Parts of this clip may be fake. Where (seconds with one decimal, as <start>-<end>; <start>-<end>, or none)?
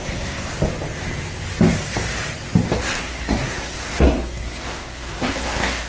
0.0-0.5; 2.8-5.9